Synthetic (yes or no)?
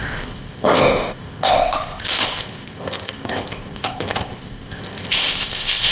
yes